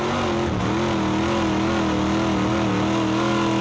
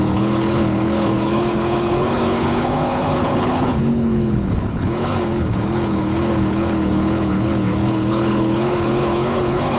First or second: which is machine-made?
second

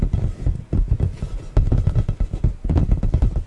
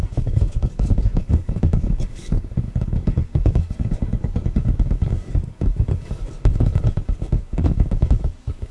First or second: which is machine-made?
second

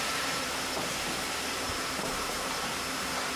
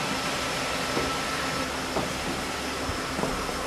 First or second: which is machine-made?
first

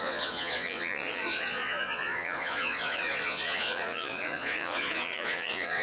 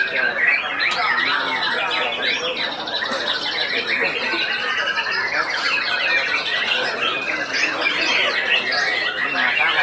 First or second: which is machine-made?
first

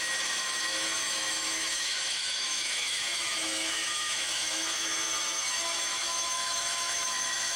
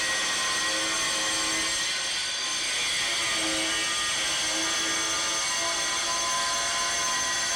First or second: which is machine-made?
first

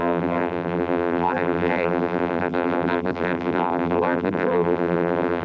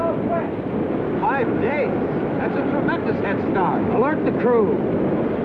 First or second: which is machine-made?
first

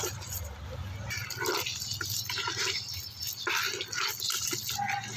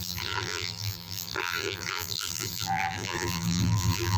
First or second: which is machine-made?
second